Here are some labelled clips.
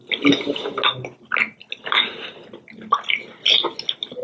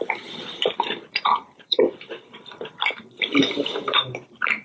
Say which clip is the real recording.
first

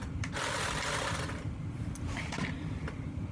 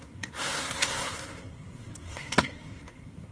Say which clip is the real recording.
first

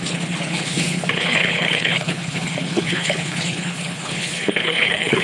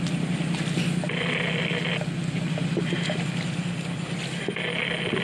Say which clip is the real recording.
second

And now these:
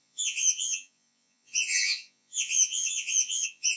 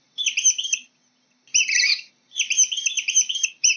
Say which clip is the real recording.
second